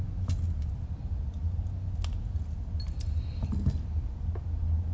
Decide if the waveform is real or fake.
real